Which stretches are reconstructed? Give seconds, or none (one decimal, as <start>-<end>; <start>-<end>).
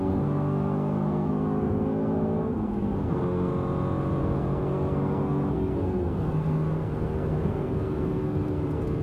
0.0-3.5; 4.2-9.0